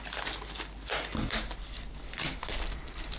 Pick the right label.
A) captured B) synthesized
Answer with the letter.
A